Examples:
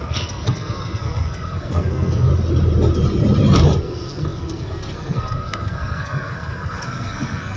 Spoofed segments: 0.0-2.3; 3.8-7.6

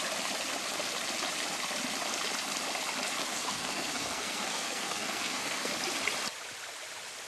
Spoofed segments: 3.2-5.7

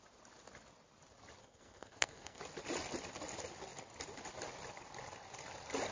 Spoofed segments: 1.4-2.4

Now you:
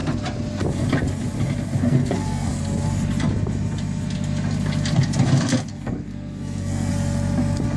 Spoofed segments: 1.8-2.6; 5.7-6.9

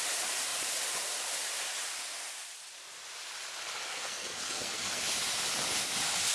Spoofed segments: 3.9-5.0

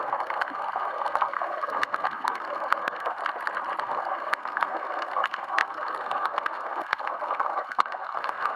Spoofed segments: 0.0-3.2; 3.8-8.6

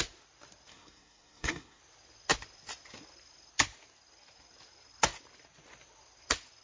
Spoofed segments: 0.7-1.8

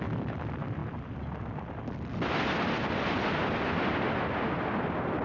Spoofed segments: none